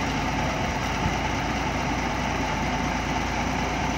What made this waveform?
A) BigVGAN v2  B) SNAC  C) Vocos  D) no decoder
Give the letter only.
A